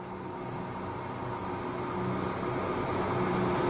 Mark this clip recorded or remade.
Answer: recorded